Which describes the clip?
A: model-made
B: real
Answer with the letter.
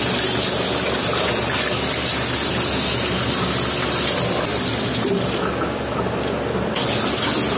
B